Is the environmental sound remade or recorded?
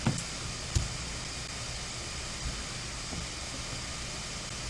recorded